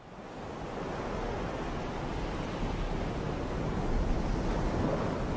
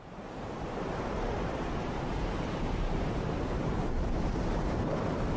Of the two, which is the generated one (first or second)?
second